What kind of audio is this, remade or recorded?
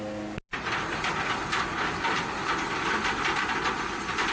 recorded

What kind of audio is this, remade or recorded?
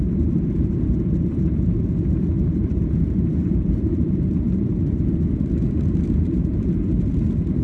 remade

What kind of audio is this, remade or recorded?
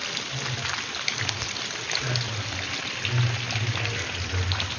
recorded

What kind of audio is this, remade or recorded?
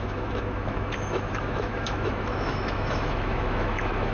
remade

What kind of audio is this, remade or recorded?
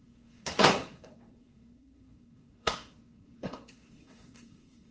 remade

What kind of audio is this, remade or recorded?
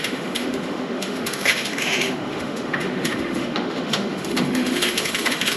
remade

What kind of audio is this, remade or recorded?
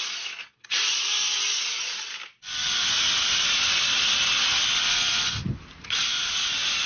recorded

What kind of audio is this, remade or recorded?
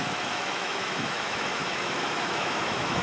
remade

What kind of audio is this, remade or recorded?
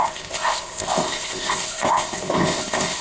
remade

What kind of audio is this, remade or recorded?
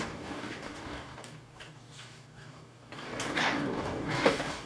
remade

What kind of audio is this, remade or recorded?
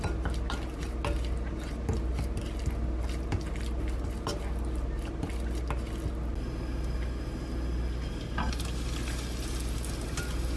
recorded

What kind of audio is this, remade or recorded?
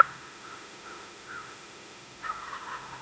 remade